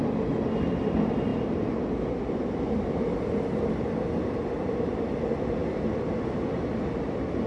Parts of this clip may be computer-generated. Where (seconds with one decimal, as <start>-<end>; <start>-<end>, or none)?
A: 0.0-1.3; 2.2-7.5